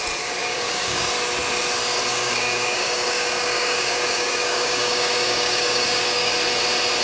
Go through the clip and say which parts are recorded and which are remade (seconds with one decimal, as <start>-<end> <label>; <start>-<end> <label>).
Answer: 0.0-0.4 recorded; 0.4-1.1 remade; 1.1-2.1 recorded; 2.1-6.3 remade; 6.3-7.0 recorded

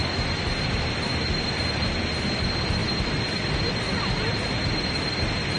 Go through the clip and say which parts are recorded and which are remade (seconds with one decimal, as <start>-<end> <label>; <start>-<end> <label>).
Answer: 0.0-5.6 recorded

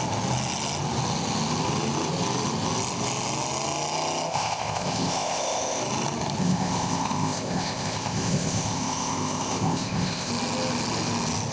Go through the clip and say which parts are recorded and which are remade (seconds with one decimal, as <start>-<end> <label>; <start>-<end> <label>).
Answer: 0.0-4.3 recorded; 4.3-5.8 remade; 5.8-6.4 recorded; 6.4-10.3 remade; 10.3-11.5 recorded

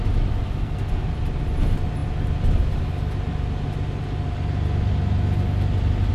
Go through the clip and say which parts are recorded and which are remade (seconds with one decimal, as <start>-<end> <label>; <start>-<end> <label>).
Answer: 0.0-0.6 recorded; 0.6-1.1 remade; 1.1-6.1 recorded

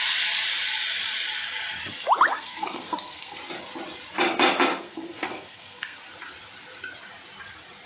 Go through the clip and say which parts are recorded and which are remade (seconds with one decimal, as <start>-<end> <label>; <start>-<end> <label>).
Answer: 0.0-2.3 recorded; 2.3-3.4 remade; 3.4-4.7 recorded; 4.7-6.0 remade; 6.0-7.9 recorded

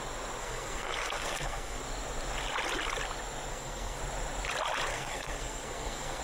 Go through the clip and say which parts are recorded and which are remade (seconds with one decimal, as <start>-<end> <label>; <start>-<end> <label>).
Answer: 0.0-0.4 recorded; 0.4-1.8 remade; 1.8-3.5 recorded; 3.5-4.0 remade; 4.0-4.9 recorded; 4.9-6.2 remade

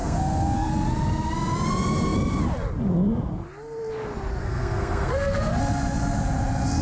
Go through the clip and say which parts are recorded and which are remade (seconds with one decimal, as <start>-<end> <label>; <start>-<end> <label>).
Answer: 0.0-0.7 remade; 0.7-4.4 recorded; 4.4-5.6 remade; 5.6-6.8 recorded

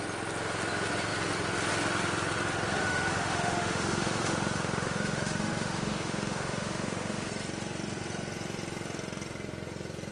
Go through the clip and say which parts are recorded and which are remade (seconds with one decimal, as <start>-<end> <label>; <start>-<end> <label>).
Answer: 0.0-2.8 recorded; 2.8-7.3 remade; 7.3-10.1 recorded